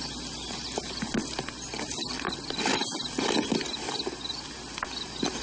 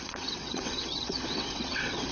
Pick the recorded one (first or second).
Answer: first